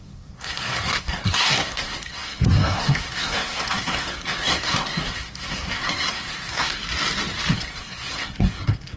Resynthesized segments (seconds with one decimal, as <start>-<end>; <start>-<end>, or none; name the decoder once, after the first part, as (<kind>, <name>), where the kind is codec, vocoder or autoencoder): 0.0-6.8 (codec, SNAC); 7.5-9.0